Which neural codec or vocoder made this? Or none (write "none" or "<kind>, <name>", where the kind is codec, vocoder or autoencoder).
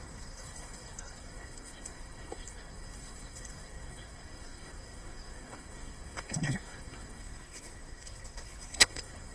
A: codec, SNAC